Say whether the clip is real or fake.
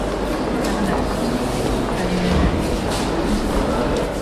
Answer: real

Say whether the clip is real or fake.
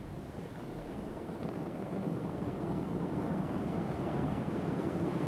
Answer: fake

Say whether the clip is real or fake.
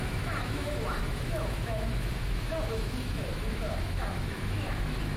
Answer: fake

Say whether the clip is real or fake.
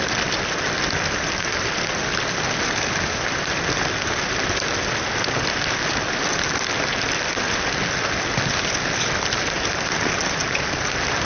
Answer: real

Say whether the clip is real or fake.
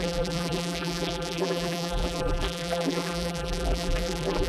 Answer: fake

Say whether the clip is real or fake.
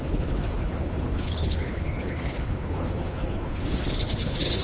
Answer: fake